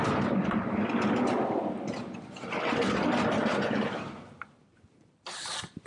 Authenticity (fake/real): fake